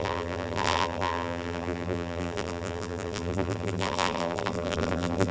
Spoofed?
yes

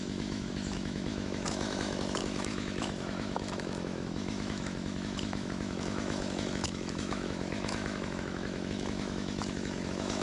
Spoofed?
yes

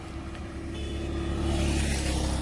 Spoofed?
no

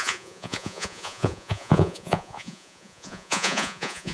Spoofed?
yes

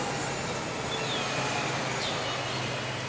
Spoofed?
no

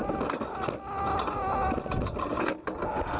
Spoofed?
no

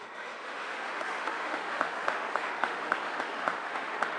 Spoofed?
yes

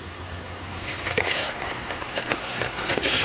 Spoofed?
yes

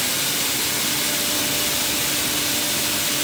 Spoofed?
no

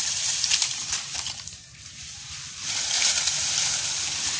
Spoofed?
yes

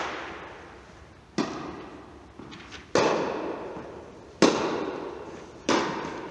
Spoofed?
no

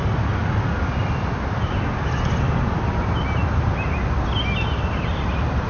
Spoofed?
no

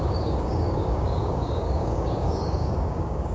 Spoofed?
yes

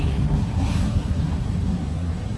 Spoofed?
yes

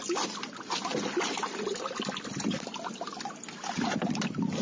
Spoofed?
no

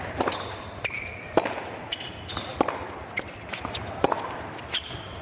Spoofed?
no